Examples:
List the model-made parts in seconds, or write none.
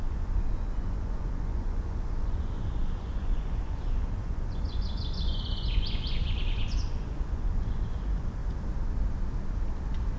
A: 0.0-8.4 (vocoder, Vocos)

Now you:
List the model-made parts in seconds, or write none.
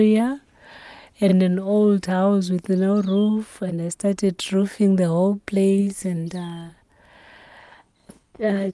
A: 7.6-8.7 (codec, HILCodec)